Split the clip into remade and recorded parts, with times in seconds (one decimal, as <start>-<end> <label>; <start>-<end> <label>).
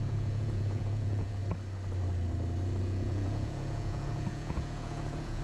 0.0-1.4 remade; 1.4-2.8 recorded; 2.8-5.4 remade